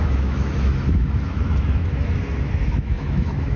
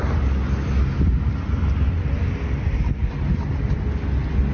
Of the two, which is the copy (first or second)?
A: first